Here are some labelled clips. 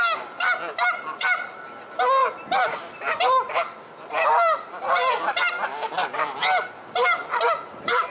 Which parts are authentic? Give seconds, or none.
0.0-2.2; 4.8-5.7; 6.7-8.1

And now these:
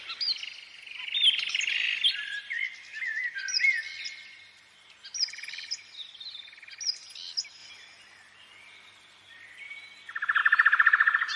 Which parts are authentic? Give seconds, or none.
0.0-11.4

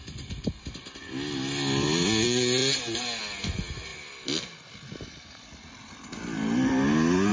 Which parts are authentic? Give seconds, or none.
0.0-7.3

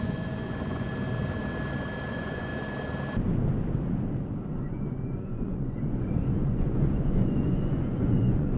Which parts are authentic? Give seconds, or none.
0.9-2.1; 2.5-4.6

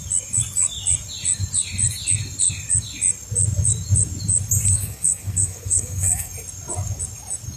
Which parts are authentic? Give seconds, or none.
0.0-4.7; 6.3-7.6